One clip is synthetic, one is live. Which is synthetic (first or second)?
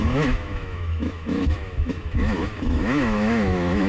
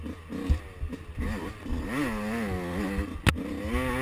first